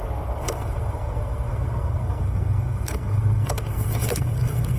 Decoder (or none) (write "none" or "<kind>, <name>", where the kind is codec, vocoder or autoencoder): codec, SNAC